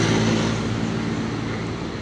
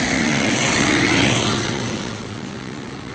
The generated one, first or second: second